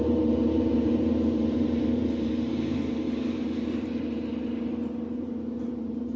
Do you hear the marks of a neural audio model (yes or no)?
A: yes